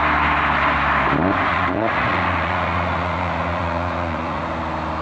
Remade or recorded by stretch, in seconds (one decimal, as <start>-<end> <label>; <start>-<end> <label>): 0.0-1.5 recorded; 1.5-4.4 remade; 4.4-5.0 recorded